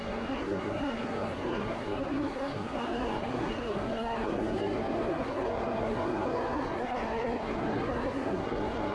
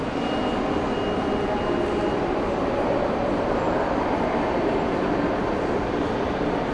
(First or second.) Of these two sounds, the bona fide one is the second